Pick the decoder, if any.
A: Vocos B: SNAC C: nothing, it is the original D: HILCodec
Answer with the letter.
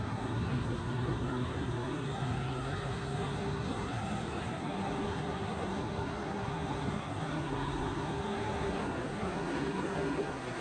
B